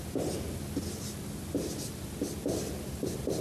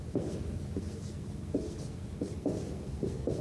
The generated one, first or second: second